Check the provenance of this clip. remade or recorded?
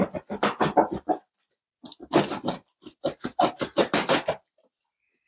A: recorded